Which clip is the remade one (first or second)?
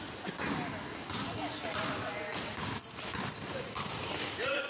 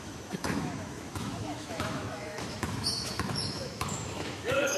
second